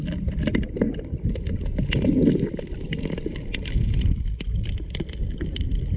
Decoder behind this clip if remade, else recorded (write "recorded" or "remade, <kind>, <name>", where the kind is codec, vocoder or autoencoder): recorded